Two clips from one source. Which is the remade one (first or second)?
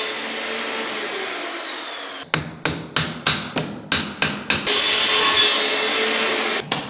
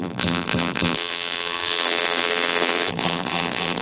second